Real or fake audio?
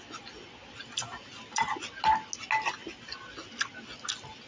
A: real